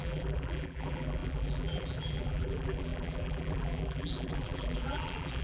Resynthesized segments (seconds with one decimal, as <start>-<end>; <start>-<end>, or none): 0.0-5.4